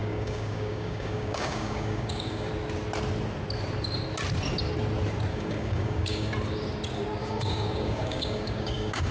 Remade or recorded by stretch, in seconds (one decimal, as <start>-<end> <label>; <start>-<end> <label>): 0.0-2.5 remade; 2.5-5.3 recorded; 5.3-6.3 remade; 6.3-7.2 recorded; 7.2-9.1 remade